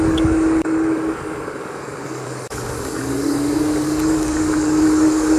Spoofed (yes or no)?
yes